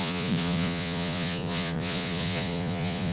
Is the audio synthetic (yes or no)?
yes